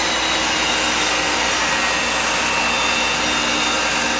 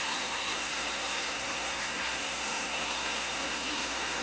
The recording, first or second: first